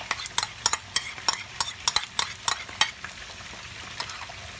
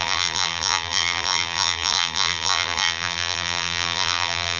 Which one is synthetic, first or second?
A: second